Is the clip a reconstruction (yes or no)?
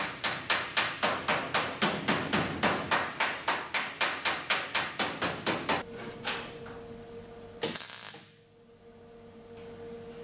no